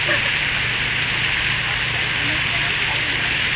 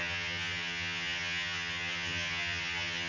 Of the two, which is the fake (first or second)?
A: second